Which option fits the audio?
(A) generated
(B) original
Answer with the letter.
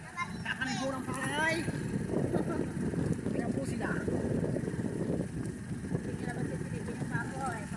B